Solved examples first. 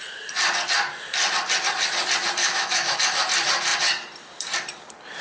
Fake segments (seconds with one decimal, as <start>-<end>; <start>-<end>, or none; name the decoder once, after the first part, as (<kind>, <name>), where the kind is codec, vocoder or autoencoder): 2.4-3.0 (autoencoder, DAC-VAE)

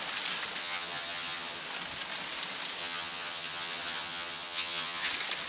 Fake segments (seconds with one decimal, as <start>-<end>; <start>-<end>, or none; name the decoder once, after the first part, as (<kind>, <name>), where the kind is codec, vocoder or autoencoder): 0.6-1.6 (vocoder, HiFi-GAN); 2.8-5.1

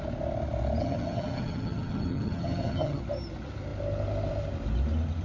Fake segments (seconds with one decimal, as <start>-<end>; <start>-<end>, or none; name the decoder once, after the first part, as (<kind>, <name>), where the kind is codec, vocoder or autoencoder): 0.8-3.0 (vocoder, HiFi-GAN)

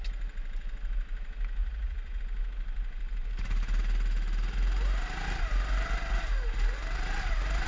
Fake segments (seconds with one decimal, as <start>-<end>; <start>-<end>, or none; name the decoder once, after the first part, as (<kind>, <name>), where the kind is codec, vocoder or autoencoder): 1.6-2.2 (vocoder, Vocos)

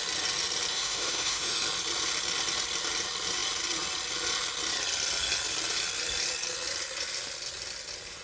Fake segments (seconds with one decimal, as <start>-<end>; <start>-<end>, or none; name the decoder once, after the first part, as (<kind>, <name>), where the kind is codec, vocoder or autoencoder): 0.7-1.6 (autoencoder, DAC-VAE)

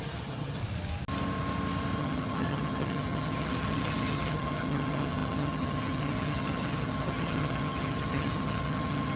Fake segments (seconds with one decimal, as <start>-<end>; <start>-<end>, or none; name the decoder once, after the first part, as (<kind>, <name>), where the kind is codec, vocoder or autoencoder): 0.0-0.6 (vocoder, HiFi-GAN); 2.0-9.2